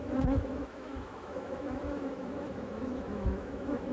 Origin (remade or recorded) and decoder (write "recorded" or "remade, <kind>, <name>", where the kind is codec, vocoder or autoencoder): remade, autoencoder, DAC-VAE